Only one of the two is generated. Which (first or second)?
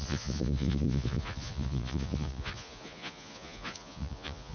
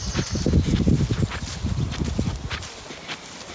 first